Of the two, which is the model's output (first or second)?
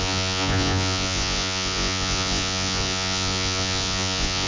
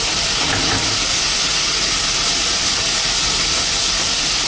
first